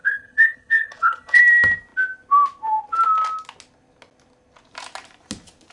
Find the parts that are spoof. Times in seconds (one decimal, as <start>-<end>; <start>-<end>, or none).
0.0-1.4